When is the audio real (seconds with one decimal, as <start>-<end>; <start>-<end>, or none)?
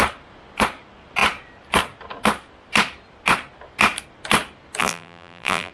0.0-4.8